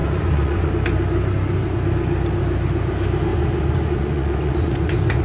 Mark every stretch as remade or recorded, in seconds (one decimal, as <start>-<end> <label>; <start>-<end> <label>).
0.0-0.7 remade; 0.7-3.3 recorded; 3.3-5.2 remade